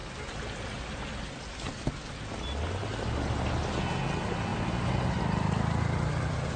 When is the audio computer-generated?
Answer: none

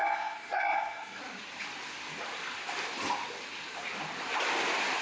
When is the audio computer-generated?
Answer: 0.0-1.2 (codec, SNAC)

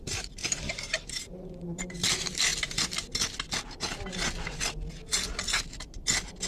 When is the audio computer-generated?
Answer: 0.0-0.4 (vocoder, BigVGAN v2); 0.9-2.5